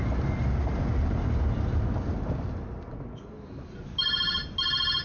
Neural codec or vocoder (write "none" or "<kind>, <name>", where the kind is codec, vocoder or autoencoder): none